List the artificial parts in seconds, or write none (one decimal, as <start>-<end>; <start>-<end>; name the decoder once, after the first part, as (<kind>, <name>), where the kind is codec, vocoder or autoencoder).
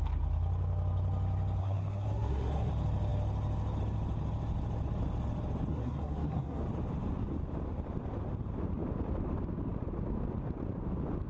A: 1.6-2.7 (codec, SNAC); 5.7-6.6